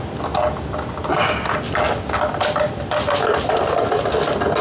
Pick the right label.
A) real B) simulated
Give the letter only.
A